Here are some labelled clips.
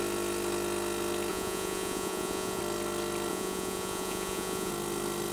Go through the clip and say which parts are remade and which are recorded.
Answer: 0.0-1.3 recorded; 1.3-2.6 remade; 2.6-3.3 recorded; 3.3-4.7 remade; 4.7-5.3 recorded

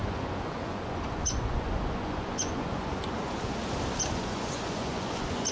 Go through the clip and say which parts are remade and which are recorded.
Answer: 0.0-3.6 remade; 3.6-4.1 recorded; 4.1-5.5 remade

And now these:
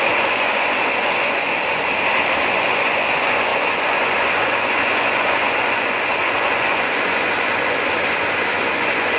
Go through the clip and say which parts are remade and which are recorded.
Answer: 0.0-1.9 remade; 1.9-2.5 recorded; 2.5-9.2 remade

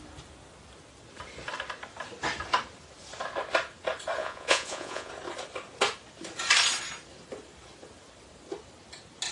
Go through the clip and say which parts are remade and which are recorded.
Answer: 0.0-4.2 recorded; 4.2-5.1 remade; 5.1-9.3 recorded

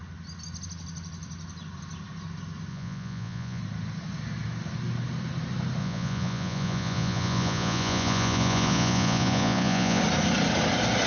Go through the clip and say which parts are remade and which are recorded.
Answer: 0.0-2.7 recorded; 2.7-3.6 remade; 3.6-5.8 recorded; 5.8-10.0 remade; 10.0-11.1 recorded